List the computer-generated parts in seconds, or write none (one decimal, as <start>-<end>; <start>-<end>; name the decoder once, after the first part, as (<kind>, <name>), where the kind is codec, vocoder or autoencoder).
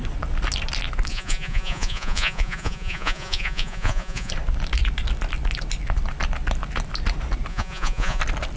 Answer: 1.1-4.3 (vocoder, Vocos); 7.5-8.2